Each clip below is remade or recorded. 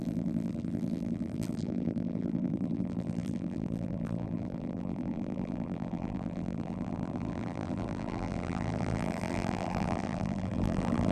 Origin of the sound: remade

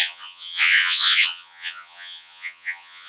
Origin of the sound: remade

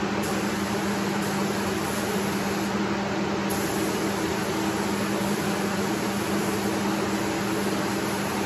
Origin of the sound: recorded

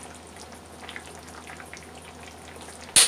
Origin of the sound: recorded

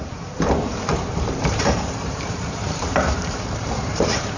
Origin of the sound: remade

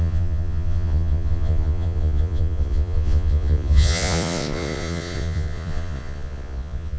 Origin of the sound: remade